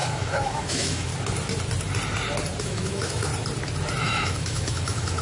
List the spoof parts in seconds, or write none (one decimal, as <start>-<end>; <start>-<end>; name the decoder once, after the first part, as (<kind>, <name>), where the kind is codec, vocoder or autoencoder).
0.0-1.1 (autoencoder, DAC-VAE); 2.6-3.3; 4.0-5.2